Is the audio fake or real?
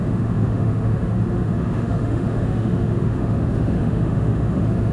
fake